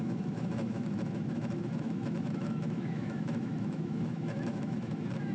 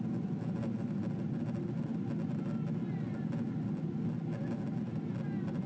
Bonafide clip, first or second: second